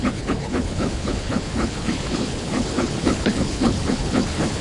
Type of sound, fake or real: fake